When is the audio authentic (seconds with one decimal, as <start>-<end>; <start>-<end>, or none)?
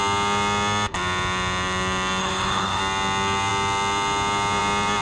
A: 0.0-2.2; 2.8-5.0